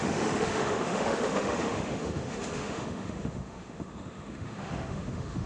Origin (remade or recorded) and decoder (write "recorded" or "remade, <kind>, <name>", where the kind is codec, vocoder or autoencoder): remade, autoencoder, DAC-VAE